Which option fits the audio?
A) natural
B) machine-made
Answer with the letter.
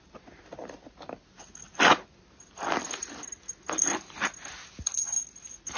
A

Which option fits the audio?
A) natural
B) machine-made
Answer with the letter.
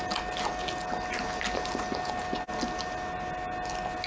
A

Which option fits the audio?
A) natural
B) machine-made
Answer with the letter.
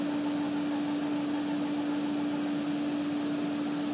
A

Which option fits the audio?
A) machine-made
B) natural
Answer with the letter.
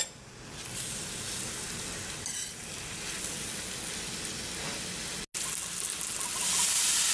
B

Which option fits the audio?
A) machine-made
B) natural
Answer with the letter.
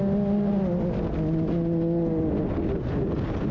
B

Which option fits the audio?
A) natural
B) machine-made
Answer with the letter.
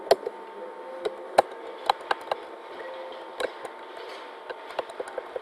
A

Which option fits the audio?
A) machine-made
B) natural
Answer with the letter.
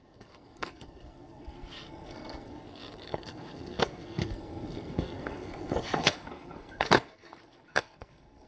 A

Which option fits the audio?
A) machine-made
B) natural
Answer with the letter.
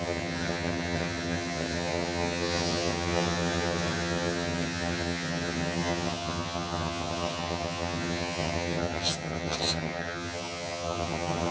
A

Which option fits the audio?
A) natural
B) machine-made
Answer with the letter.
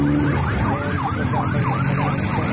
A